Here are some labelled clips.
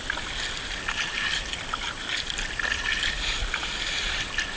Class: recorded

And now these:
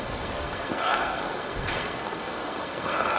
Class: remade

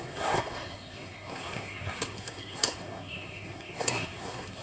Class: remade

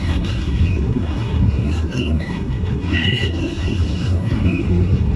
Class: remade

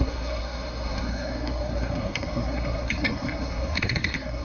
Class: remade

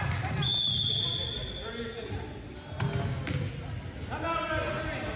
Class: recorded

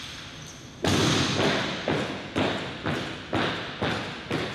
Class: recorded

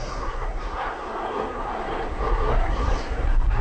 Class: remade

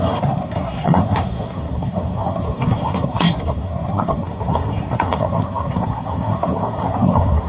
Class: remade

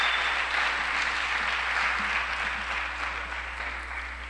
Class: recorded